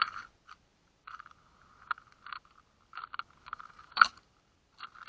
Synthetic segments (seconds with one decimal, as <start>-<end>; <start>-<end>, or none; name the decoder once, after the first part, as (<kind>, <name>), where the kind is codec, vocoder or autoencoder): none